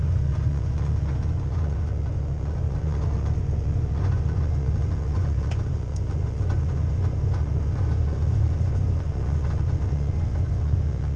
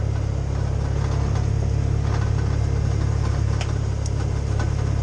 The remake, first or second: first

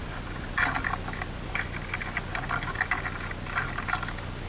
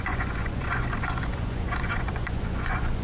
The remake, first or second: second